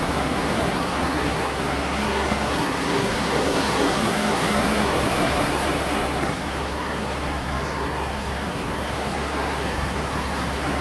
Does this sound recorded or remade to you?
remade